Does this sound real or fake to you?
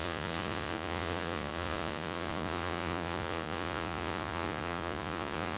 fake